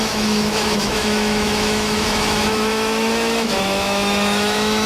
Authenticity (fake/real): fake